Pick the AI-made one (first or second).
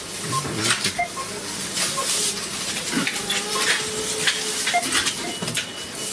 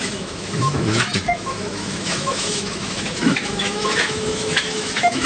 second